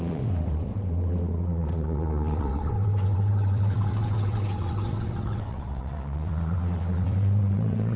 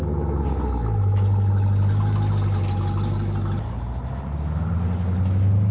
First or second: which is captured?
second